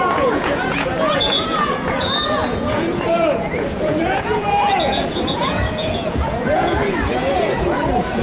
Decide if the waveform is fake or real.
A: fake